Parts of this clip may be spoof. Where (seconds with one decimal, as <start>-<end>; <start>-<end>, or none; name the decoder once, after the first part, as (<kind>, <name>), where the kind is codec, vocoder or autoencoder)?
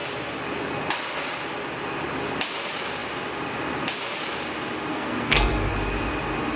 4.9-5.7 (codec, SNAC)